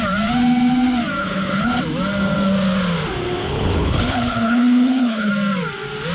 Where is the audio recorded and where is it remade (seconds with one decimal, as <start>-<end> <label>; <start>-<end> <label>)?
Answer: 0.0-1.2 recorded; 1.2-1.8 remade; 1.8-3.4 recorded; 3.4-5.3 remade; 5.3-6.1 recorded